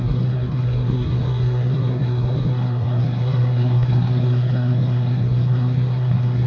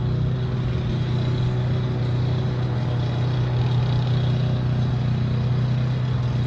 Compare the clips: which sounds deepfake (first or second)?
first